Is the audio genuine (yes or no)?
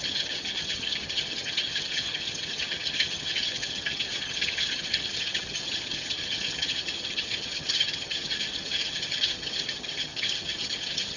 no